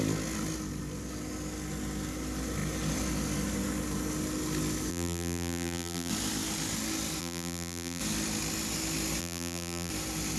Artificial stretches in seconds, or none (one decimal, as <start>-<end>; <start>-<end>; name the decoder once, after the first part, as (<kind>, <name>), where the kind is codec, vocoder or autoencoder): 4.9-6.1 (vocoder, BigVGAN v2); 7.2-8.0; 9.2-9.9